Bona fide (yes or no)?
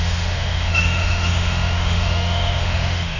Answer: no